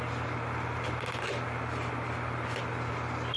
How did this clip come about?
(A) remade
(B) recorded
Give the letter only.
B